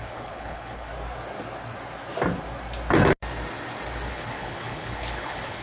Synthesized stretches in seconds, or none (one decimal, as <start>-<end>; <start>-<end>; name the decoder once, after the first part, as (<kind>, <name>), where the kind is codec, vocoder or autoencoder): 0.0-0.9 (codec, HILCodec); 4.1-5.6